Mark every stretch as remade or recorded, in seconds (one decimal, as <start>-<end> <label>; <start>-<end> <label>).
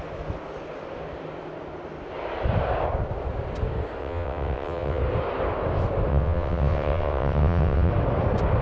0.0-4.0 recorded; 4.0-5.0 remade; 5.0-6.1 recorded; 6.1-7.9 remade; 7.9-8.6 recorded